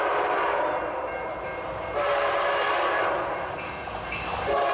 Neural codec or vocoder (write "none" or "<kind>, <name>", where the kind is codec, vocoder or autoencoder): vocoder, BigVGAN v2